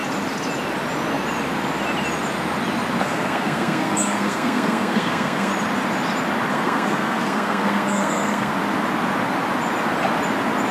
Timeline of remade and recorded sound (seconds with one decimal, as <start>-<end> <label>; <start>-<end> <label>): 0.0-3.0 recorded; 3.0-5.5 remade; 5.5-6.5 recorded; 6.5-8.5 remade; 8.5-10.7 recorded